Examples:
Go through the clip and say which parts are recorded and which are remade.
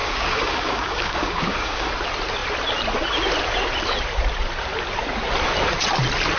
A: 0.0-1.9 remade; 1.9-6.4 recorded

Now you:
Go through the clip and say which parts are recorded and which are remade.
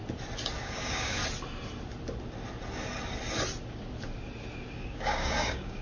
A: 0.0-0.6 recorded; 0.6-1.2 remade; 1.2-4.7 recorded; 4.7-5.8 remade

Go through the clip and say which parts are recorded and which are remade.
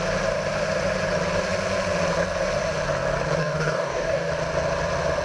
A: 0.0-3.4 recorded; 3.4-4.3 remade; 4.3-5.2 recorded